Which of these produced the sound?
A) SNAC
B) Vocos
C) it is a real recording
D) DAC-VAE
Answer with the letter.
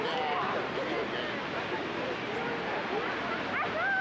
C